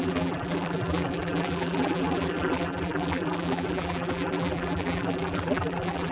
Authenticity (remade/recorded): remade